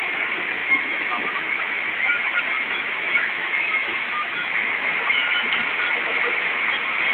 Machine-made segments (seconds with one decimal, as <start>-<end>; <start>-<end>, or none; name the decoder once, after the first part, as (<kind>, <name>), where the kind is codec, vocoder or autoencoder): 0.6-4.9 (autoencoder, DAC-VAE)